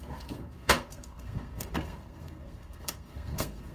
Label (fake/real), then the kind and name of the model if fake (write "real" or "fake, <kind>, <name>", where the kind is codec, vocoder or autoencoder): fake, codec, SNAC